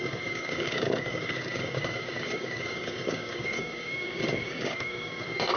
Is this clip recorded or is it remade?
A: remade